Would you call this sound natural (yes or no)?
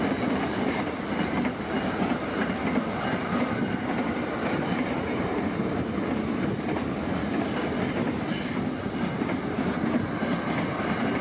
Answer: yes